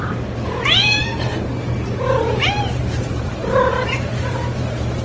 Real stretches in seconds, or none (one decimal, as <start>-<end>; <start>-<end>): 1.0-2.2

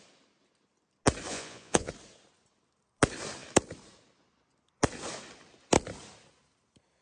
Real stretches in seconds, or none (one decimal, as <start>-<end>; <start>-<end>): 0.0-1.3; 1.9-7.0

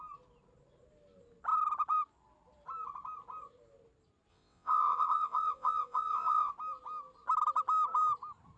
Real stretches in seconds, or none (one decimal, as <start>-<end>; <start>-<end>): 0.0-4.3; 6.5-8.6

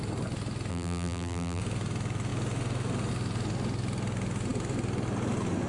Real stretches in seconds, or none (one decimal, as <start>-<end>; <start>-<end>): 0.0-0.7; 1.6-5.7

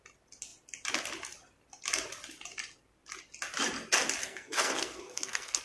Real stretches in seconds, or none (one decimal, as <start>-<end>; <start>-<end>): 0.0-4.2

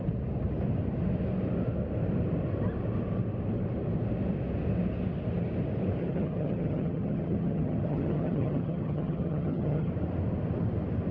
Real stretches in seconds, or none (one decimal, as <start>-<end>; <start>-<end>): 0.0-6.0; 9.9-11.1